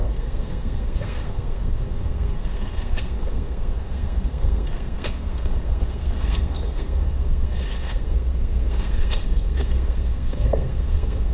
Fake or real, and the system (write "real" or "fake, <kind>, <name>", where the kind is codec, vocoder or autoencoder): fake, codec, SNAC